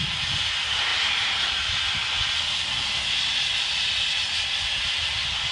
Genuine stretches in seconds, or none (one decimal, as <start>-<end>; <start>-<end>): 0.0-0.9; 1.8-5.5